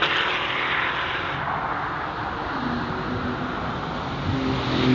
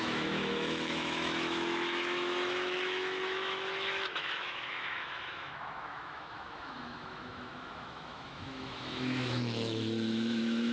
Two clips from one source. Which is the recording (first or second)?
first